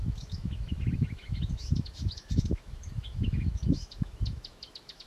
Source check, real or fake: fake